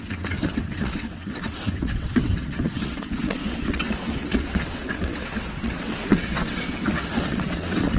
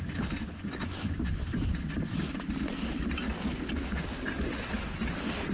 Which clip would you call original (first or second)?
second